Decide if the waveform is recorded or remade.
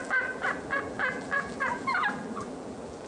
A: remade